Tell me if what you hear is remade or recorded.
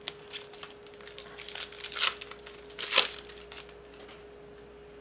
recorded